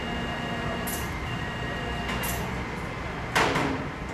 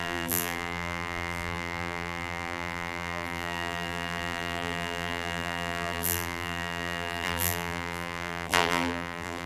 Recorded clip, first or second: first